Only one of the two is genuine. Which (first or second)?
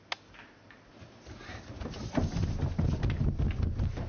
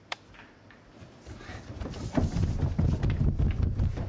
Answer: first